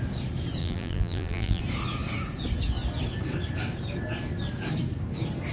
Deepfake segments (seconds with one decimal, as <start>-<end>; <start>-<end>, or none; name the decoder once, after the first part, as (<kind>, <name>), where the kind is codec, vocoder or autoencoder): 0.6-1.6 (vocoder, BigVGAN v2)